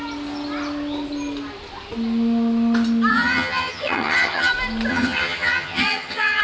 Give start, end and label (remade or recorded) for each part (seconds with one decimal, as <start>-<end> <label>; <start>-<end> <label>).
0.0-3.1 recorded; 3.1-4.5 remade; 4.5-4.9 recorded; 4.9-6.4 remade